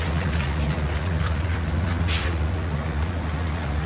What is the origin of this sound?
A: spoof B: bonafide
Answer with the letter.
A